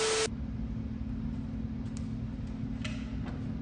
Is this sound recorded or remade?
recorded